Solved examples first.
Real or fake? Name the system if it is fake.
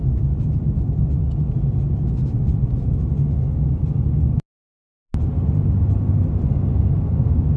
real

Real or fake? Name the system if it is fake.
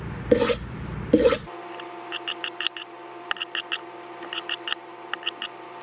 real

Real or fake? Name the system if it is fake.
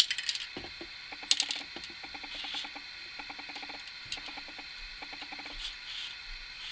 real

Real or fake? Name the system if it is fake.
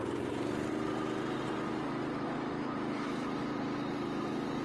real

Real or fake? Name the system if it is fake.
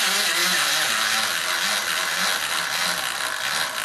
real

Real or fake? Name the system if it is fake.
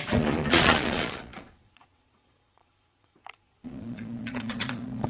fake, vocoder, Vocos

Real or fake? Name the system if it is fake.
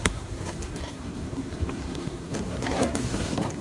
fake, codec, SNAC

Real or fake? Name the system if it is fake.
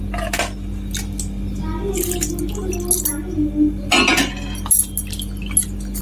real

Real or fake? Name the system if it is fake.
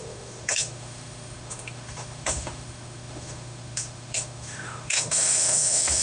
fake, autoencoder, DAC-VAE